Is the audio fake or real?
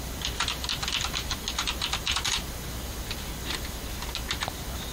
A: real